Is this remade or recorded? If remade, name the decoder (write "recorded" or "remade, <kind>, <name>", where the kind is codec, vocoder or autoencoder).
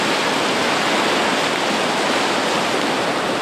recorded